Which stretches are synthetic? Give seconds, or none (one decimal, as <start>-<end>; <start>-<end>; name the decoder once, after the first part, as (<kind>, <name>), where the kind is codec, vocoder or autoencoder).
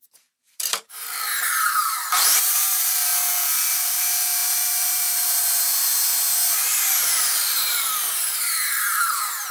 0.0-3.1 (vocoder, BigVGAN v2); 3.7-9.5